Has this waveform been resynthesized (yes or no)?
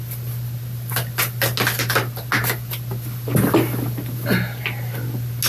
no